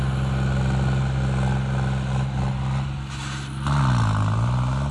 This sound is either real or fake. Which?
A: real